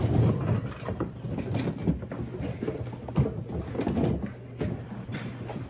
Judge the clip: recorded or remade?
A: recorded